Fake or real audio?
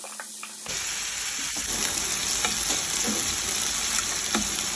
real